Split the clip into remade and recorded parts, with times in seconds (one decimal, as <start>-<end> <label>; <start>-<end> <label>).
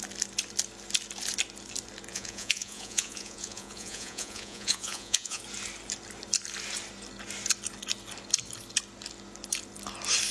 0.0-2.1 recorded; 2.1-5.4 remade; 5.4-10.3 recorded